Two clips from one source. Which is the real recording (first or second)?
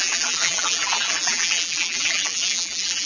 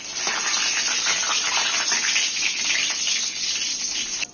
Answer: second